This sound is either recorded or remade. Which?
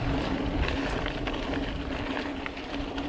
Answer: remade